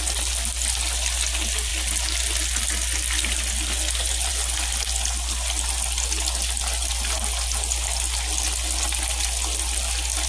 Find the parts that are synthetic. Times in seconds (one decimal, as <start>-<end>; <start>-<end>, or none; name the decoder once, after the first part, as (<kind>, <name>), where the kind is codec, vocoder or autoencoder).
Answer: none